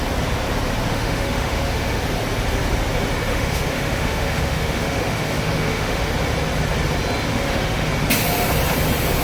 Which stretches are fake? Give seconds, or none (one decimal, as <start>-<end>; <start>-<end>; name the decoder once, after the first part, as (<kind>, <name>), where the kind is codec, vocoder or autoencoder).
0.9-2.0 (autoencoder, DAC-VAE); 3.3-6.1; 7.3-7.9